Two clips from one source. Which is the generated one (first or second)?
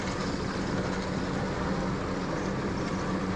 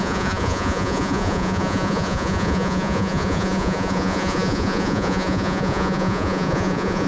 second